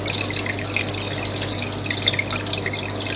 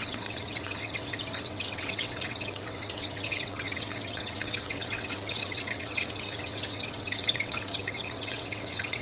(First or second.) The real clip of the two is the first